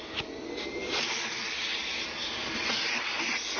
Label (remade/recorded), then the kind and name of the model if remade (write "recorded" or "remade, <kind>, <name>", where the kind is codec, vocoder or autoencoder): recorded